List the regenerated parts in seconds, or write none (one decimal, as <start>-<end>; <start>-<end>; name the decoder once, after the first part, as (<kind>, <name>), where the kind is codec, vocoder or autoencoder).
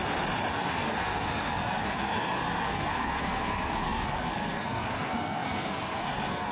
0.5-6.5 (codec, SNAC)